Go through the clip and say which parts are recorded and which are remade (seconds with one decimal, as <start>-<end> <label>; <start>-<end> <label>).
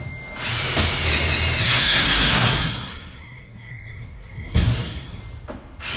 0.0-1.6 recorded; 1.6-5.2 remade; 5.2-6.0 recorded